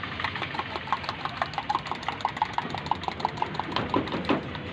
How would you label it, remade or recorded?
recorded